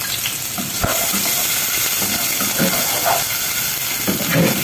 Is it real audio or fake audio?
real